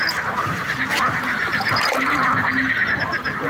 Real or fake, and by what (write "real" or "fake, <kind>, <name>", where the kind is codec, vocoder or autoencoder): real